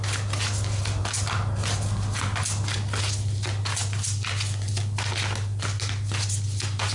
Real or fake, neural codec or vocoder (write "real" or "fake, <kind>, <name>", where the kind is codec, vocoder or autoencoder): real